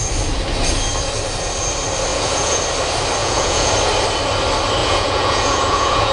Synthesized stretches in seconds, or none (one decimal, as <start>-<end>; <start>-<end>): 2.1-2.6; 3.2-3.7; 4.8-6.1